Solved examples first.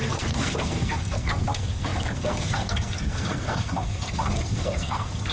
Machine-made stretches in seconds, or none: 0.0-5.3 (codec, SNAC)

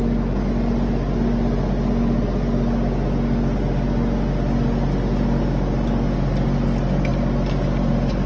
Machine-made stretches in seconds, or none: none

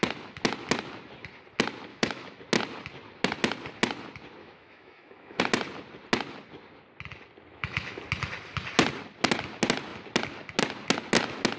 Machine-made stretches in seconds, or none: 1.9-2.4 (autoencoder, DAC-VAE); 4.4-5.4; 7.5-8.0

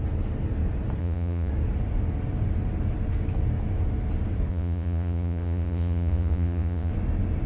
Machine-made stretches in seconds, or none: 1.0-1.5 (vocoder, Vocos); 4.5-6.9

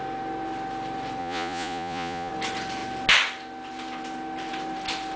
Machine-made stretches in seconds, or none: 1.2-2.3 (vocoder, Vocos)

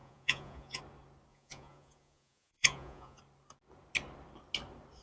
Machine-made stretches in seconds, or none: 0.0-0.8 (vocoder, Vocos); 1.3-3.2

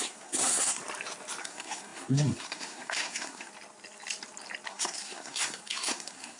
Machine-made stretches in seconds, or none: 0.0-0.8 (codec, SNAC); 1.4-3.5; 4.7-6.4

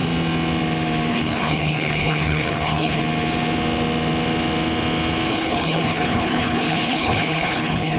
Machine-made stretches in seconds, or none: 1.1-3.0 (codec, HILCodec); 5.3-8.0